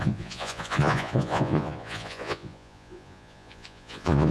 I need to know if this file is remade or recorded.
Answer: remade